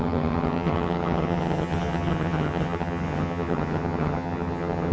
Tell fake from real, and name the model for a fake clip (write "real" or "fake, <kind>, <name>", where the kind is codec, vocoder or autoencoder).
fake, vocoder, HiFi-GAN